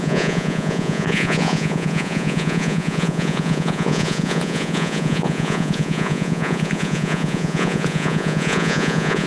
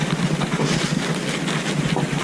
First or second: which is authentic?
second